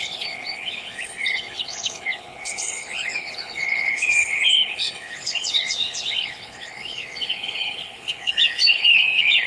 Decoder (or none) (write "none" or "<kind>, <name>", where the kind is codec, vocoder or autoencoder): codec, HILCodec